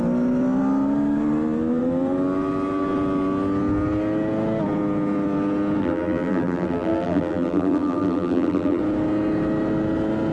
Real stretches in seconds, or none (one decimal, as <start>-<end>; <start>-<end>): 0.0-5.8; 8.8-10.3